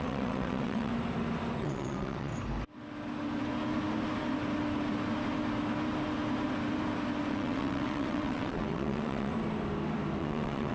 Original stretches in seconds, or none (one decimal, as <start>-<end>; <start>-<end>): 0.9-1.6; 2.3-7.3; 9.3-10.2